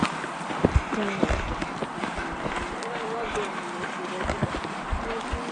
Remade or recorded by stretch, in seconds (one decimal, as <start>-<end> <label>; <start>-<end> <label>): 0.0-5.5 recorded